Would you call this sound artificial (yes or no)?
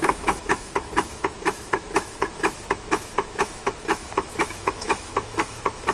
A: yes